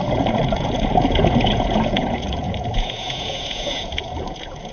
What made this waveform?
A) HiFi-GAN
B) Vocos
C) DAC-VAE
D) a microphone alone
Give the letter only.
B